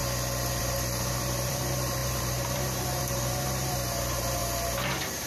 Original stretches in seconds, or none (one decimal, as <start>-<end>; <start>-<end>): 0.0-0.6; 4.4-5.3